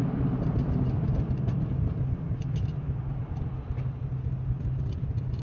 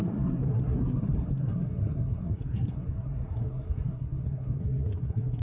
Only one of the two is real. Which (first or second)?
first